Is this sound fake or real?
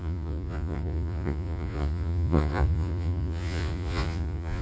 fake